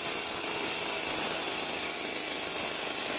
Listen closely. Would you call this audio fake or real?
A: real